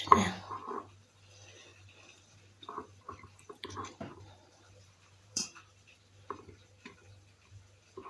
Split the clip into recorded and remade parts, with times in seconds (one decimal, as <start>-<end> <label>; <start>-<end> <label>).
0.0-1.7 recorded; 1.7-5.6 remade; 5.6-8.1 recorded